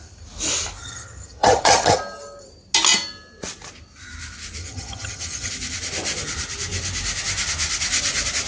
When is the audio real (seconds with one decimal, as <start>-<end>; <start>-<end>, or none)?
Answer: 0.0-0.8; 2.0-4.6; 5.5-8.5